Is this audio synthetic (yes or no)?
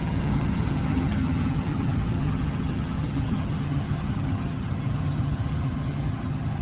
yes